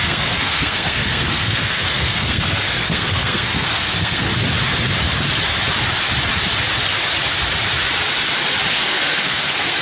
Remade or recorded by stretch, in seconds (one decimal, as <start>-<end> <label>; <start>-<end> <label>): 0.0-4.3 remade; 4.3-8.7 recorded; 8.7-9.8 remade